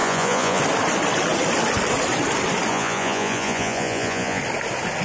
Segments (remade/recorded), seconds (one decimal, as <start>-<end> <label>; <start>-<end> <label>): 0.0-0.6 remade; 0.6-2.7 recorded; 2.7-4.4 remade; 4.4-5.0 recorded